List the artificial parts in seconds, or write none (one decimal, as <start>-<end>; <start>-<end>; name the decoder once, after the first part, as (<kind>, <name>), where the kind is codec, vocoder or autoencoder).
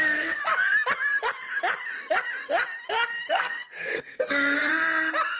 0.0-0.4 (codec, SNAC); 3.3-4.7